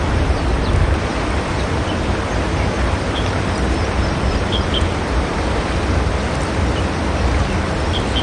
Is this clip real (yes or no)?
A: yes